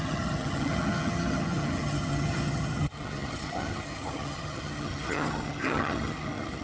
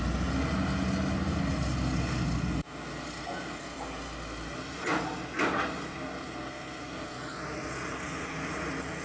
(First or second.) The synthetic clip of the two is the first